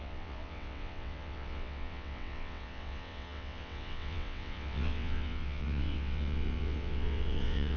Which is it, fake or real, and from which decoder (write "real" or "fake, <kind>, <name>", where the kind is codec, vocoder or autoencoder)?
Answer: fake, vocoder, WaveNeXt